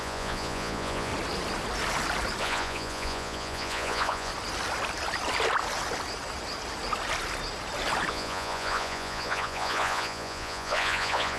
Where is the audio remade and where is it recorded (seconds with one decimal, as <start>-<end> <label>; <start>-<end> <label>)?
0.0-1.1 remade; 1.1-2.4 recorded; 2.4-4.3 remade; 4.3-8.1 recorded; 8.1-11.4 remade